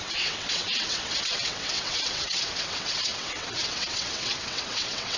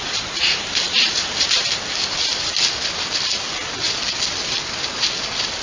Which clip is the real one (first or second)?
second